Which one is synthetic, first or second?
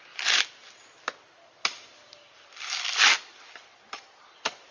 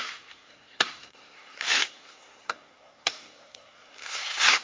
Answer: second